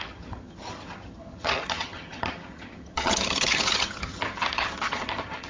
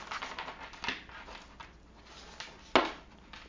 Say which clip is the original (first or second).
second